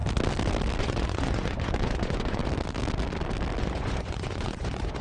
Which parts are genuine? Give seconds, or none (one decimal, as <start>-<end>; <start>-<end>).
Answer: 0.0-0.8; 2.4-3.6